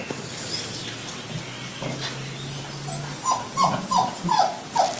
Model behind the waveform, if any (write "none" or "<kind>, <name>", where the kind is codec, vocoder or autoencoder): none